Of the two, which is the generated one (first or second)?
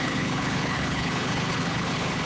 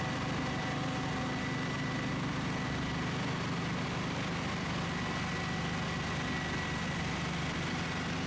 first